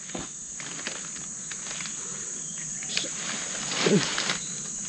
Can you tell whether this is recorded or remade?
recorded